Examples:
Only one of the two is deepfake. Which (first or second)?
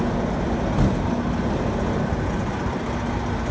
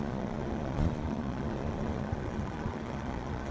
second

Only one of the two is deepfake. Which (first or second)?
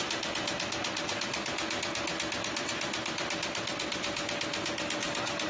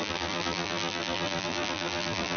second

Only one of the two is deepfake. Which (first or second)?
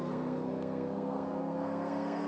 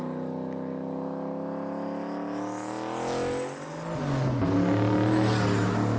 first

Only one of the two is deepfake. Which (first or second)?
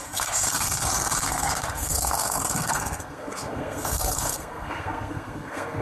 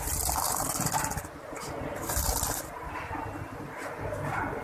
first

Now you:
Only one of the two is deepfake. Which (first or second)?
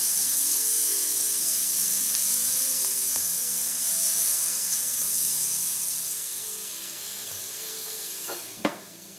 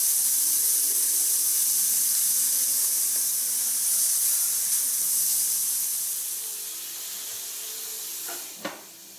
first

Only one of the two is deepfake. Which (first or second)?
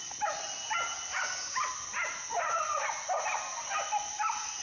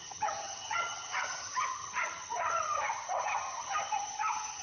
second